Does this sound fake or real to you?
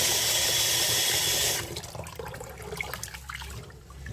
real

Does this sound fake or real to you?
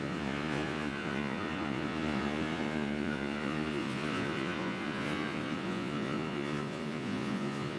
fake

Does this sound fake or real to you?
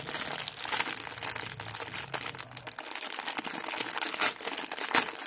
real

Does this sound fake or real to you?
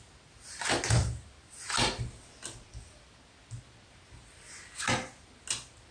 real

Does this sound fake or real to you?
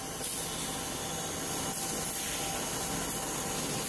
real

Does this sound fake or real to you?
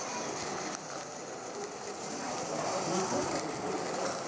real